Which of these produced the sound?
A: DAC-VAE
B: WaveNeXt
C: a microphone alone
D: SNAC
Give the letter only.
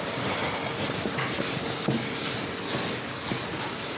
C